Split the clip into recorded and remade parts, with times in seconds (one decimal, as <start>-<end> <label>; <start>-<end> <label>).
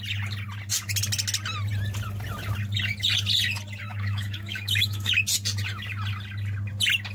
0.0-3.9 recorded; 3.9-5.1 remade; 5.1-7.1 recorded